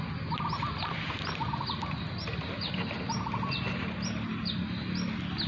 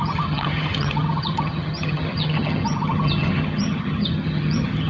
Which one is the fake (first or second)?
second